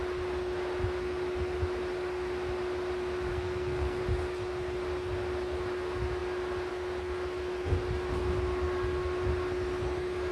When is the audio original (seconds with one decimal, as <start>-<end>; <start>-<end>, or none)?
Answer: 0.0-3.3; 4.0-10.3